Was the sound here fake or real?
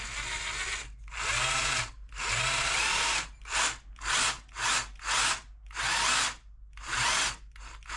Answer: real